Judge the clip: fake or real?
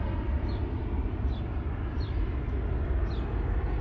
real